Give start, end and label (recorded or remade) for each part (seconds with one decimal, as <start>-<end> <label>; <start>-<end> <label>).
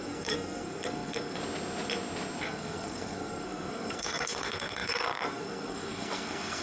0.0-1.4 remade; 1.4-2.4 recorded; 2.4-6.6 remade